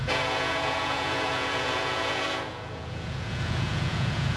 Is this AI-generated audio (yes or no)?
yes